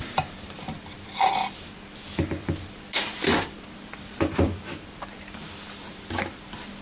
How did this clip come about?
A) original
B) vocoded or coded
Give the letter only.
B